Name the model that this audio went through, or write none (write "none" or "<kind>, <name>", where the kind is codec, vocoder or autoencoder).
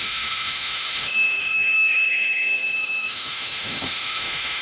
autoencoder, DAC-VAE